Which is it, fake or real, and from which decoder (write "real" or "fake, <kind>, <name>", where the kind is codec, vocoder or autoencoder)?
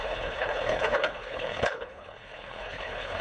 fake, codec, HILCodec